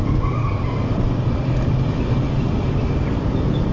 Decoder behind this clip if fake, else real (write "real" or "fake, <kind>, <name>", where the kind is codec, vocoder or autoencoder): real